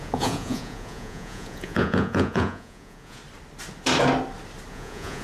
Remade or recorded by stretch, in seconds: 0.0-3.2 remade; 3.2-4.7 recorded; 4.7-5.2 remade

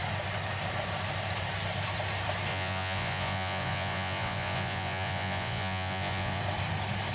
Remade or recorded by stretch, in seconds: 0.0-2.5 recorded; 2.5-6.4 remade; 6.4-7.1 recorded